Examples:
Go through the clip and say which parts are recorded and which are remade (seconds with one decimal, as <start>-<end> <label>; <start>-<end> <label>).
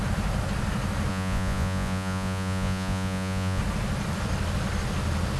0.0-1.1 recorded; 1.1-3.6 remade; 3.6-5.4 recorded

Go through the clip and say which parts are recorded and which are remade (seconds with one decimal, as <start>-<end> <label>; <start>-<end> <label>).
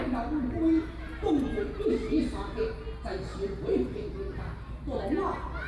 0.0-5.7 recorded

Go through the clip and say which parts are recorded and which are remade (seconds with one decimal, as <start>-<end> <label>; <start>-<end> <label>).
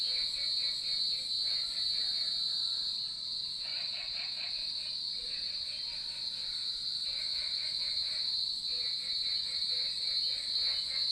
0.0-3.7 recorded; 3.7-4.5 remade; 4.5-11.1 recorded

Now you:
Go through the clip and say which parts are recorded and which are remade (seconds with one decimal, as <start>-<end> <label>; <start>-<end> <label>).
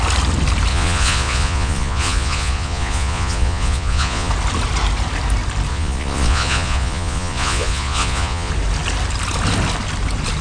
0.0-0.7 recorded; 0.7-4.3 remade; 4.3-5.7 recorded; 5.7-8.5 remade; 8.5-10.4 recorded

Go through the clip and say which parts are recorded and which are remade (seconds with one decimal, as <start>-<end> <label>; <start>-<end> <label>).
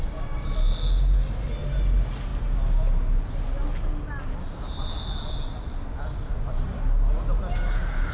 0.0-8.1 recorded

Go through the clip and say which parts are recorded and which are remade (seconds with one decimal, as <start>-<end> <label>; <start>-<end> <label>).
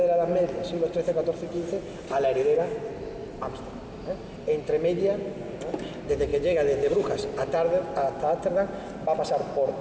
0.0-9.8 recorded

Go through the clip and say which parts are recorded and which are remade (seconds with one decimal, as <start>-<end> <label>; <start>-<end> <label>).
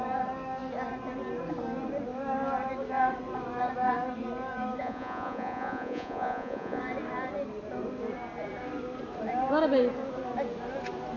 0.0-4.8 recorded; 4.8-6.8 remade; 6.8-11.2 recorded